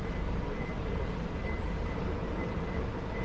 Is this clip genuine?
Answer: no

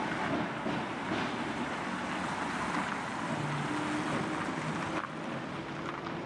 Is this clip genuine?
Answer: yes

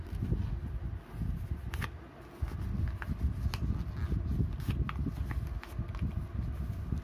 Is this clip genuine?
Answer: yes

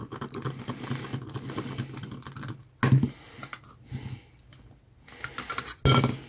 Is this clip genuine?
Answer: yes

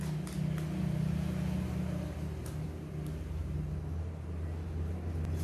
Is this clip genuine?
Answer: yes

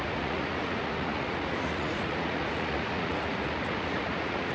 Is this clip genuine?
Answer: no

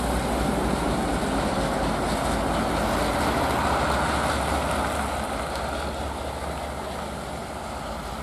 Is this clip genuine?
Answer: yes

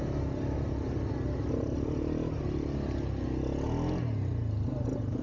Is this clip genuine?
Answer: yes